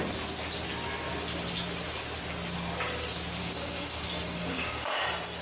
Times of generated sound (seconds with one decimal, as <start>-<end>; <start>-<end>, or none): 3.4-5.0